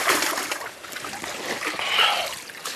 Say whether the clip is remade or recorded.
recorded